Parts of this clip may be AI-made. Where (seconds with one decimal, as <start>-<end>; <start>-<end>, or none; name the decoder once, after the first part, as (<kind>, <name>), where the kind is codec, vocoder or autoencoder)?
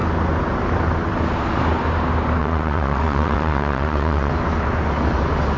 2.4-4.3 (vocoder, WaveNeXt)